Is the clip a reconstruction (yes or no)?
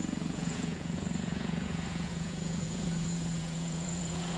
yes